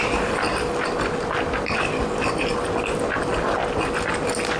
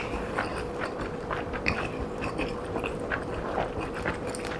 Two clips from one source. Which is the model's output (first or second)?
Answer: second